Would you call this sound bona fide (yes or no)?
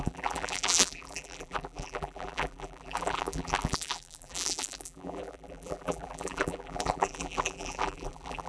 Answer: no